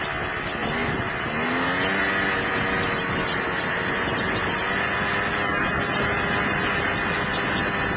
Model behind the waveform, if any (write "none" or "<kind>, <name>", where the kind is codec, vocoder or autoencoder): none